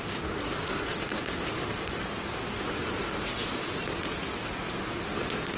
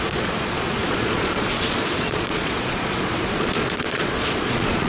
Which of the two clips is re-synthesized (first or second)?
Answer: second